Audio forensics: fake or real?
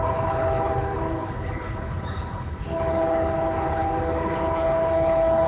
fake